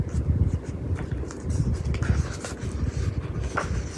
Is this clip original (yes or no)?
yes